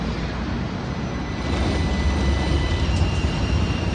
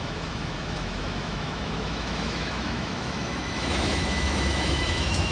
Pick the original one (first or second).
first